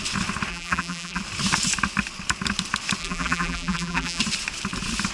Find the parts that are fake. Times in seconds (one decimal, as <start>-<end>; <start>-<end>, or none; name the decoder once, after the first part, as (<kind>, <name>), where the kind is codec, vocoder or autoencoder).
0.5-1.2 (vocoder, BigVGAN v2); 3.0-4.2